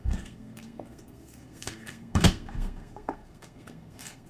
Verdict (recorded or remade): remade